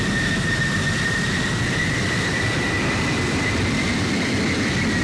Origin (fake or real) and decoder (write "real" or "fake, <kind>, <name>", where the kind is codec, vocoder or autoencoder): real